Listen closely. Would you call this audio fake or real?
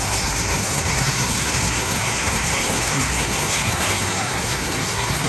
fake